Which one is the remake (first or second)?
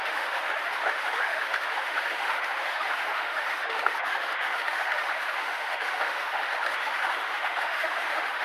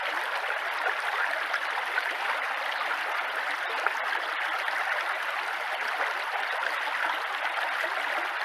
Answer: first